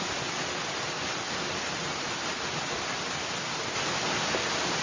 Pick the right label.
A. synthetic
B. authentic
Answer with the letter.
B